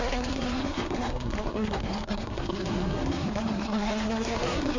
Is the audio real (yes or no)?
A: no